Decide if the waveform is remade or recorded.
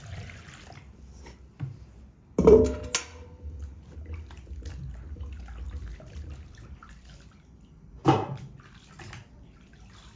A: recorded